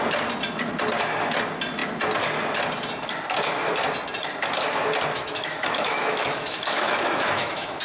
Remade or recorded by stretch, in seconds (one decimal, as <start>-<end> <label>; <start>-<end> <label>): 0.0-5.1 recorded; 5.1-7.8 remade